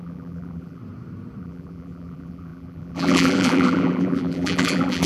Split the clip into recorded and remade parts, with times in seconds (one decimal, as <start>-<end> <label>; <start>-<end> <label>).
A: 0.0-0.8 remade; 0.8-1.4 recorded; 1.4-5.1 remade